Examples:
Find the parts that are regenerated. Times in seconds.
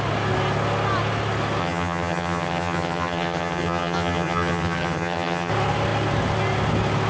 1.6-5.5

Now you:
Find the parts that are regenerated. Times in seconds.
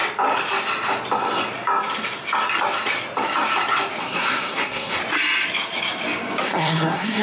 4.0-5.0; 6.4-7.2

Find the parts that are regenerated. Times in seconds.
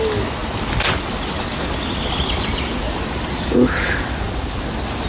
none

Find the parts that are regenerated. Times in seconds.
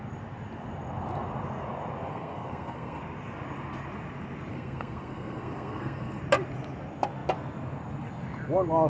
2.1-3.0; 4.5-6.2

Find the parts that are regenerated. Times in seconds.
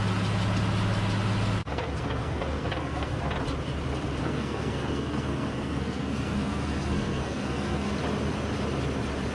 1.6-3.2; 4.2-7.9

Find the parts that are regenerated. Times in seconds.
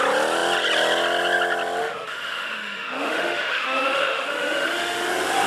1.8-5.1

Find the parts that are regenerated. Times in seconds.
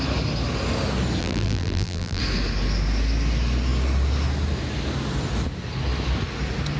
1.2-2.2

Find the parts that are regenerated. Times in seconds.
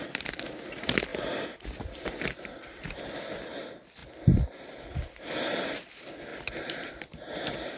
1.1-3.0; 6.3-6.9